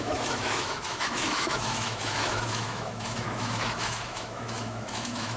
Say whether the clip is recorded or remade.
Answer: remade